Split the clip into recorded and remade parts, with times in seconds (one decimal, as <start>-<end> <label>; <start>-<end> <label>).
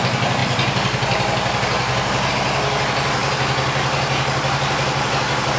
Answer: 0.0-5.6 recorded